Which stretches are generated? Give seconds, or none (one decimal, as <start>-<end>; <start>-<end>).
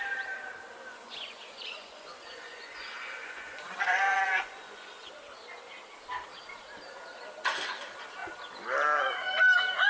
0.9-5.1